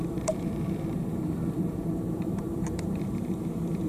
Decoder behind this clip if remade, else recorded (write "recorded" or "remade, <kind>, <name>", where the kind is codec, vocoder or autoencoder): remade, vocoder, BigVGAN v2